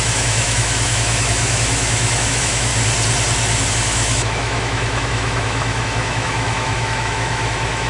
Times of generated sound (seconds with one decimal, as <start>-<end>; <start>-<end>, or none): 0.0-2.7; 3.7-7.9